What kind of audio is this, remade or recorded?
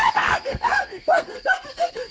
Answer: remade